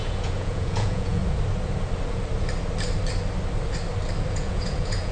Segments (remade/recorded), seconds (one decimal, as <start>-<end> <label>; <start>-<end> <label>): 0.0-1.2 remade; 1.2-4.3 recorded; 4.3-5.1 remade